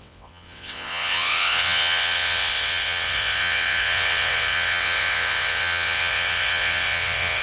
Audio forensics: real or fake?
fake